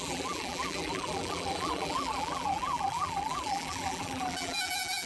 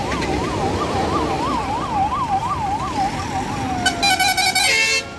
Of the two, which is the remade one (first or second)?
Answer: first